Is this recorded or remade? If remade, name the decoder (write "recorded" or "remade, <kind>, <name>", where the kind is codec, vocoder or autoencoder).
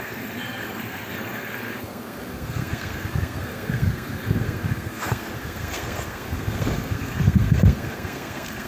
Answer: remade, codec, SNAC